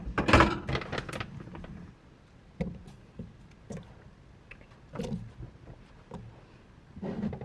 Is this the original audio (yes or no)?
yes